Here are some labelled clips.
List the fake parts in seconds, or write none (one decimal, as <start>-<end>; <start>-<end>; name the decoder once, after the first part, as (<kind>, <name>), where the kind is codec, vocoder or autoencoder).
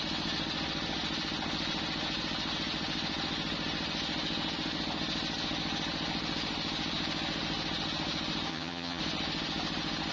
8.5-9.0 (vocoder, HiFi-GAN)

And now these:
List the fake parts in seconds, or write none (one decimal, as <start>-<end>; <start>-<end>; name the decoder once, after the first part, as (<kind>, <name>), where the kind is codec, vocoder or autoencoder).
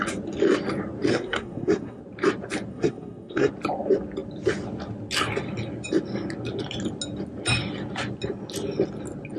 1.1-2.0 (codec, SNAC); 2.7-3.5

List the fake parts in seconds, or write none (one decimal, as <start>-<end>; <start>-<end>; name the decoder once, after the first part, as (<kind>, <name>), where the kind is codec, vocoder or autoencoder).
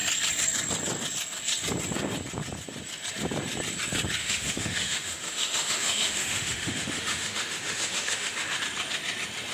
4.2-8.6 (autoencoder, DAC-VAE)